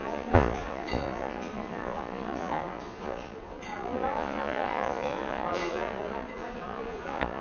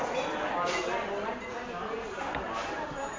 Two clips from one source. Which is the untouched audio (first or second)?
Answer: second